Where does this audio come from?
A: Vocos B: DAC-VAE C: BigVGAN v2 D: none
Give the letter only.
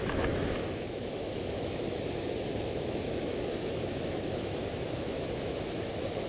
B